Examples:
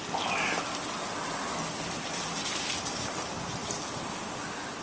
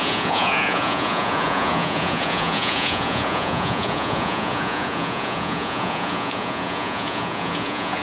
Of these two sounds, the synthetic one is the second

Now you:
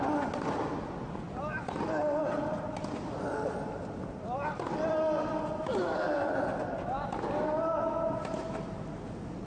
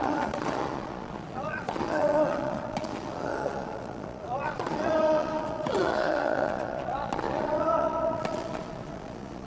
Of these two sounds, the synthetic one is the second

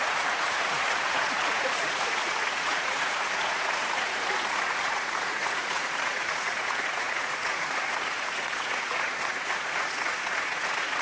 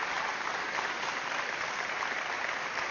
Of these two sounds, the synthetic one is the first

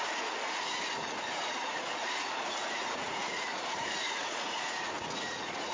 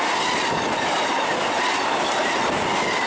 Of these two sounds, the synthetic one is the first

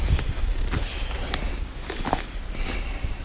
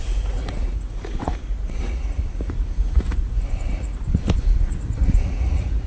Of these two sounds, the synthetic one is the second